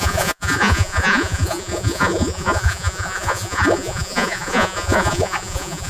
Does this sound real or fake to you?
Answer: fake